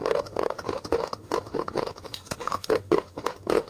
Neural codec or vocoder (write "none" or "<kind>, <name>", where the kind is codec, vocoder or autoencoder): autoencoder, DAC-VAE